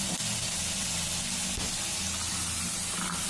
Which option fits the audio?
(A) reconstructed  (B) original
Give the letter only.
B